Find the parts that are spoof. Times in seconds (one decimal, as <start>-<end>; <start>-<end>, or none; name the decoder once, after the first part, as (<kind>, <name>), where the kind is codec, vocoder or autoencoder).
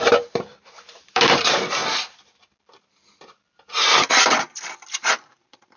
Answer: 0.0-1.8 (vocoder, BigVGAN v2); 5.1-5.8